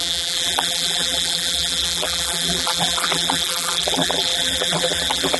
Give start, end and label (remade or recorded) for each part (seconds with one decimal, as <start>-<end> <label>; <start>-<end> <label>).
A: 0.0-5.4 remade